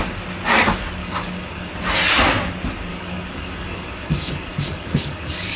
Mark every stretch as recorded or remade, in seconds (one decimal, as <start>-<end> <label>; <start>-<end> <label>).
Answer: 0.0-1.0 recorded; 1.0-1.7 remade; 1.7-2.9 recorded; 2.9-5.6 remade